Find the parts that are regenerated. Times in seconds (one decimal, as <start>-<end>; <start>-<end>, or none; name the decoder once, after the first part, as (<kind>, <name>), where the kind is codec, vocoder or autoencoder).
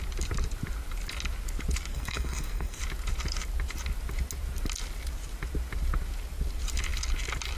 1.9-2.8 (codec, SNAC)